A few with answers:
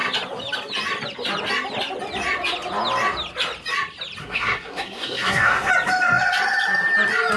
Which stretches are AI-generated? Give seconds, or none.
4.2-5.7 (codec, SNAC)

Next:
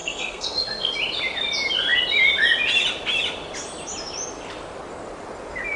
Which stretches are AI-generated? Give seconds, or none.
0.0-0.9 (codec, SNAC)

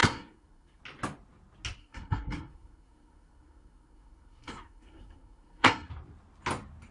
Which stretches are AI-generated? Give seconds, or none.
0.0-0.8 (codec, SNAC); 1.8-5.9

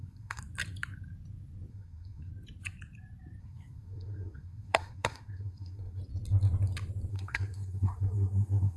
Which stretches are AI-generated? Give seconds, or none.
0.0-0.4 (codec, SNAC); 1.7-2.3; 3.4-6.0; 7.1-8.8

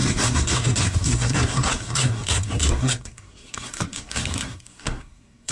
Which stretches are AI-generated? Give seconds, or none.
0.0-5.5 (codec, SNAC)

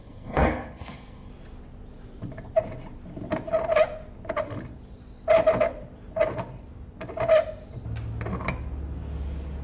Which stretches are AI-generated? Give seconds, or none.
0.0-1.3 (codec, SNAC)